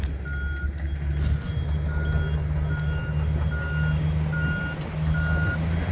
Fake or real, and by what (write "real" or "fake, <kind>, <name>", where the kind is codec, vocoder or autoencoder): real